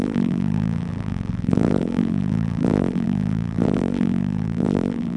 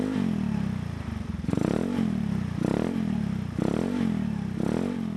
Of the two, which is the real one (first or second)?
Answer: second